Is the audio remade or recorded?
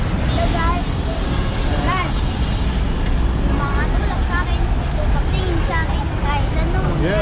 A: recorded